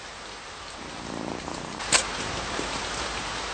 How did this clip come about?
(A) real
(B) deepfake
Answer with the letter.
A